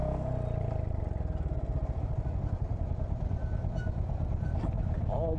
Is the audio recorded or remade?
recorded